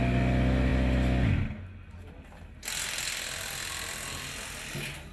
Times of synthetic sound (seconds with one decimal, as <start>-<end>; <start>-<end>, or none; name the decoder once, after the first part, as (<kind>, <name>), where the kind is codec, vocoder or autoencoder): none